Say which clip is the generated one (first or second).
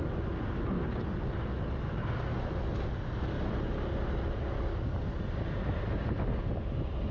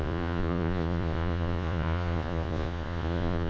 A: second